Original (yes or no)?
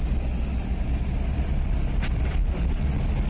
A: yes